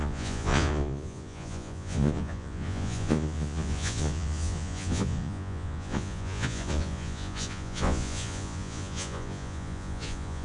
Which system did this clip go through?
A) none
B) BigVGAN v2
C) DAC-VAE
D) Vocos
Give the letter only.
D